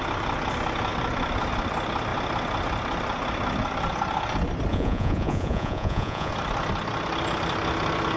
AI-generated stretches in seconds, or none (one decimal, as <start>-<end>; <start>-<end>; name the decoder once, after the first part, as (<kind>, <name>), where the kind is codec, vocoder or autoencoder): 4.7-6.3 (vocoder, Vocos)